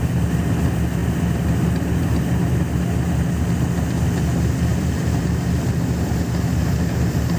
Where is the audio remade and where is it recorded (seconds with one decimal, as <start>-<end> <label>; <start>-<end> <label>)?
0.0-4.7 recorded; 4.7-5.7 remade; 5.7-7.4 recorded